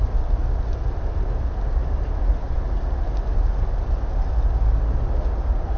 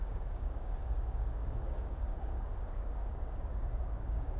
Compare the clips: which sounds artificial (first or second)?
second